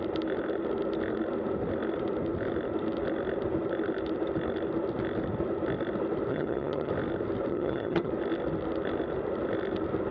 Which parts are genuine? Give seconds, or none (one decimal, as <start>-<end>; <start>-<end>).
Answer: 0.0-6.3; 6.9-7.5; 8.1-10.1